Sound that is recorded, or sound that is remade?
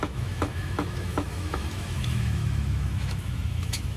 remade